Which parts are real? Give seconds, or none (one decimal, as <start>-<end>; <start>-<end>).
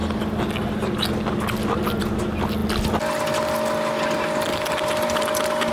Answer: 0.0-4.5